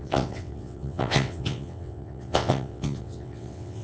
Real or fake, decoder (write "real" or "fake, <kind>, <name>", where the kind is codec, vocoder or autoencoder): fake, vocoder, WaveNeXt